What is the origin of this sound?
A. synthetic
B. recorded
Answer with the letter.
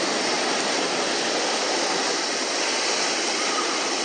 B